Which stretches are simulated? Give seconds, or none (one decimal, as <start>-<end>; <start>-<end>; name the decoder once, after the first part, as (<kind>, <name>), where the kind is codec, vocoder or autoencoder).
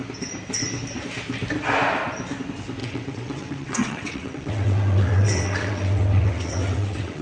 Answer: 2.8-7.2 (vocoder, WaveNeXt)